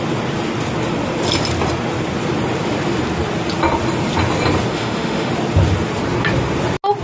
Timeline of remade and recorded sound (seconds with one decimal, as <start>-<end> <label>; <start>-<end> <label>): 0.0-4.7 recorded; 4.7-5.3 remade; 5.3-7.0 recorded